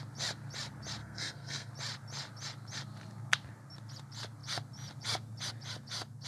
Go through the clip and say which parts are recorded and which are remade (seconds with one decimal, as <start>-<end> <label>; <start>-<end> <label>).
0.0-1.0 recorded; 1.0-1.7 remade; 1.7-6.3 recorded